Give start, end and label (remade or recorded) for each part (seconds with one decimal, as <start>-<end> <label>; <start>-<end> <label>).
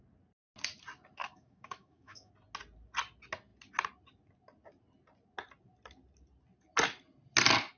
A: 0.0-1.2 recorded; 1.2-2.3 remade; 2.3-7.8 recorded